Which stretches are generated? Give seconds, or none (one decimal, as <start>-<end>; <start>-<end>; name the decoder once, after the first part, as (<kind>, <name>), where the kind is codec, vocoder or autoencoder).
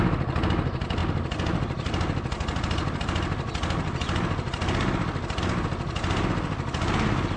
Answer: none